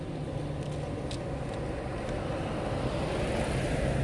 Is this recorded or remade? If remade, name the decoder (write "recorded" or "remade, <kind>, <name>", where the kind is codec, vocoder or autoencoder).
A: recorded